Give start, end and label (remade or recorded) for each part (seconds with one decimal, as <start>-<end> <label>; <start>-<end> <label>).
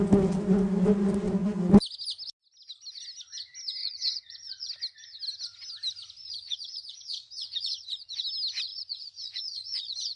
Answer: 0.0-3.8 recorded; 3.8-4.7 remade; 4.7-6.2 recorded; 6.2-8.2 remade; 8.2-8.7 recorded; 8.7-10.2 remade